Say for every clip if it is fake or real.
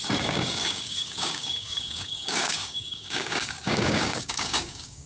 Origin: fake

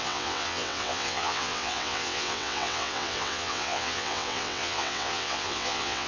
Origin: fake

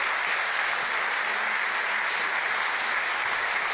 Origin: real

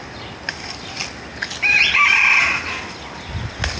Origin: real